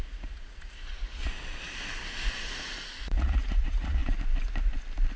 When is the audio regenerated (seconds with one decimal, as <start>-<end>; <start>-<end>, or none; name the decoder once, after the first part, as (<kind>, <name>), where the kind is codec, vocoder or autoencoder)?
0.0-1.2 (vocoder, Vocos); 2.1-4.0